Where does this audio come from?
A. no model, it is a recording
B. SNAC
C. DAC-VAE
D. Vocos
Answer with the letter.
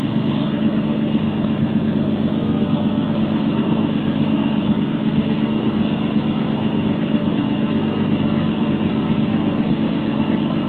B